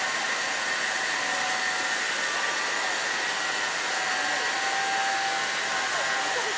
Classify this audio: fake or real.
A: real